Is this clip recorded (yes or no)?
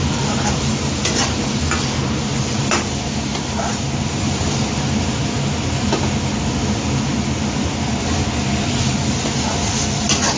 yes